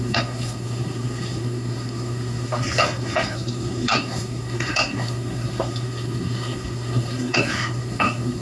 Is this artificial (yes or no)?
yes